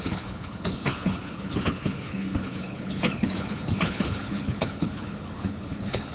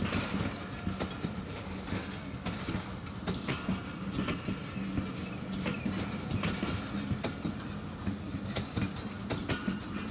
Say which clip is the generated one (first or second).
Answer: first